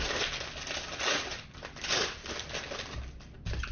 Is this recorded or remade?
recorded